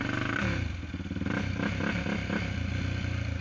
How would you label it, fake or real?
real